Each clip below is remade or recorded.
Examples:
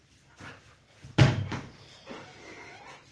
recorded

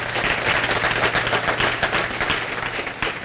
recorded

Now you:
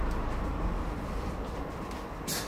recorded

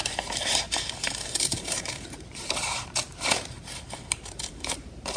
remade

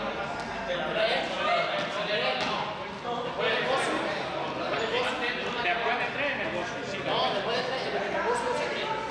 recorded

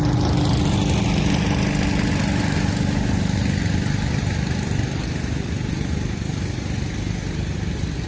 recorded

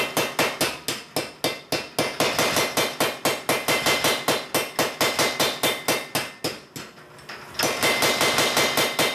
recorded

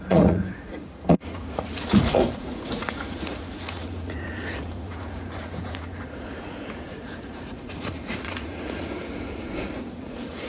remade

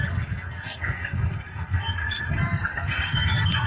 remade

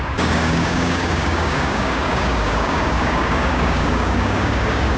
remade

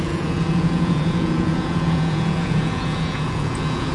remade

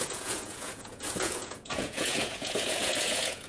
remade